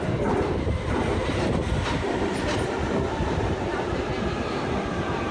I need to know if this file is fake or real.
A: fake